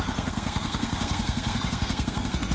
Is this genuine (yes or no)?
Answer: no